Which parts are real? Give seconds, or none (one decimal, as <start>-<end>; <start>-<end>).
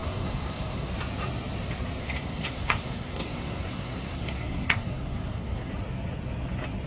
0.9-2.0; 5.7-6.9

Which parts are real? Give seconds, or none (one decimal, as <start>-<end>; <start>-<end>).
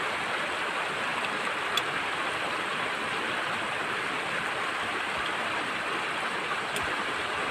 0.0-1.1; 5.6-7.5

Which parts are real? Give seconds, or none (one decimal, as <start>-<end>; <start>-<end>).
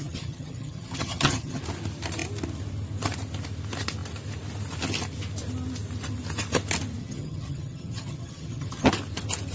1.6-7.0; 8.9-9.5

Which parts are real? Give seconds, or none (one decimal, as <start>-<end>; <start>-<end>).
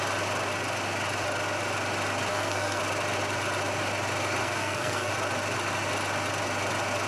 0.0-2.3; 2.8-4.4; 5.1-7.1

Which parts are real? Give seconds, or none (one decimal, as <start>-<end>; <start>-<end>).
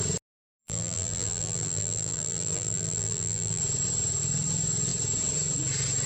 0.0-0.6; 3.6-6.1